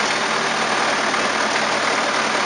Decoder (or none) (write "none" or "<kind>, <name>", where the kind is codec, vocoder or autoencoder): none